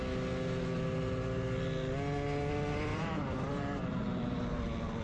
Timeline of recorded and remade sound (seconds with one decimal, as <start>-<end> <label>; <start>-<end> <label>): 0.0-2.9 recorded; 2.9-4.6 remade; 4.6-5.0 recorded